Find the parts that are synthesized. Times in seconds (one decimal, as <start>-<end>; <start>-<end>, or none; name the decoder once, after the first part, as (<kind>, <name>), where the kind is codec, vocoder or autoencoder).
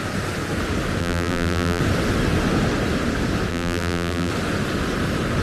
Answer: 1.0-1.8 (vocoder, BigVGAN v2); 3.5-4.3